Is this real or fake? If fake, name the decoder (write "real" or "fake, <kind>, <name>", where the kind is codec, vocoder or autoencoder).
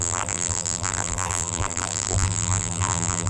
fake, vocoder, BigVGAN v2